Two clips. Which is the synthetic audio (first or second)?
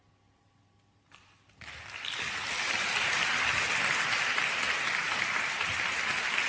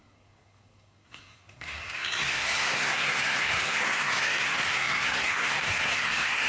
second